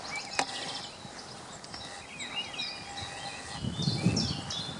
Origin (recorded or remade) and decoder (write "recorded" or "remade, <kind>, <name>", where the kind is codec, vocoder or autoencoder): recorded